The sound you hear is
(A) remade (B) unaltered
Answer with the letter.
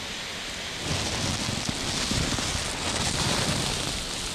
B